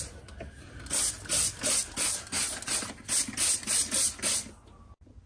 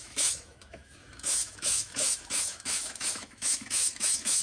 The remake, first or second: second